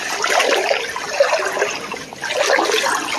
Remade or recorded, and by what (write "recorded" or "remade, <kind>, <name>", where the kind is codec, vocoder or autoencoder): recorded